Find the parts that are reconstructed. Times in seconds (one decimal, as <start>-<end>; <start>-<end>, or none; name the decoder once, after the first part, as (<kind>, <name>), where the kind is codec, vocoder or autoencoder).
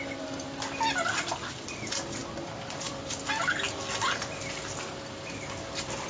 none